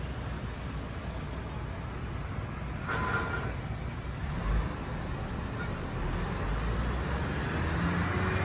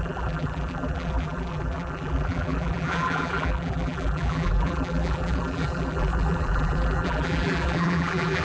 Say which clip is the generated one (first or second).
second